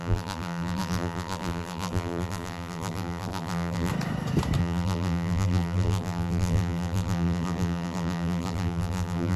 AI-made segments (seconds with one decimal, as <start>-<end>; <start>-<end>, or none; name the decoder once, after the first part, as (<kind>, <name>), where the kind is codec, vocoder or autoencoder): 0.0-3.9 (vocoder, BigVGAN v2); 4.6-9.4

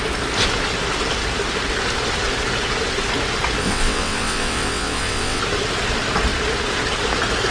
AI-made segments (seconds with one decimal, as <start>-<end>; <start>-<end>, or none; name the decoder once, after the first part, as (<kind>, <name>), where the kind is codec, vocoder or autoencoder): 3.6-5.4 (vocoder, WaveNeXt)

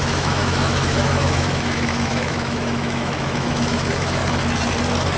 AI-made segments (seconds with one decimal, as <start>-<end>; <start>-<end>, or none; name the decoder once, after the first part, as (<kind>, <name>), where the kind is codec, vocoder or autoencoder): 0.0-4.2 (autoencoder, DAC-VAE)

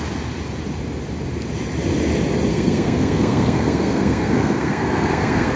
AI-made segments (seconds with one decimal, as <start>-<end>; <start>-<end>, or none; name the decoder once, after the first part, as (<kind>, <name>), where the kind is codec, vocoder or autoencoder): 2.5-5.6 (codec, SNAC)